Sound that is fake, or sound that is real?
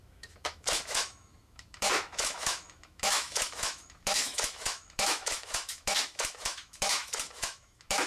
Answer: fake